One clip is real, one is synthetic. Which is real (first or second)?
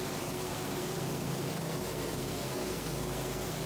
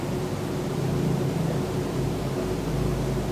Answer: second